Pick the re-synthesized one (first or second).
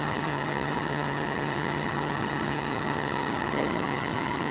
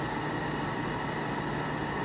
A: first